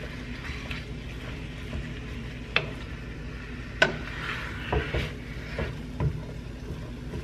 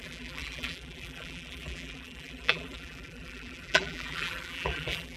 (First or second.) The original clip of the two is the first